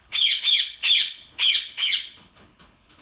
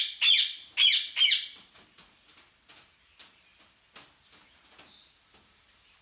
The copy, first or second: first